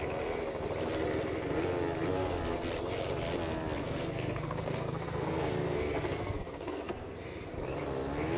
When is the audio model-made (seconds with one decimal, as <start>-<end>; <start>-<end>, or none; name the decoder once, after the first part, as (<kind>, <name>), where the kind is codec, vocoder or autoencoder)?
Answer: 3.8-7.5 (codec, SNAC)